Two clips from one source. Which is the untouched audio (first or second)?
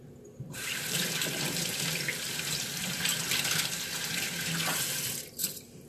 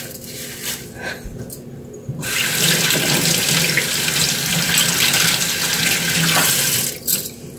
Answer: second